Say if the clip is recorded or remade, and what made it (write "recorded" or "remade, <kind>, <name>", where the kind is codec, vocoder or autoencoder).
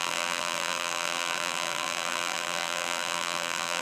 remade, vocoder, BigVGAN v2